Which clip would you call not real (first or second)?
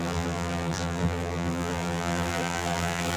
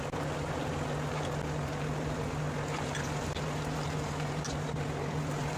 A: first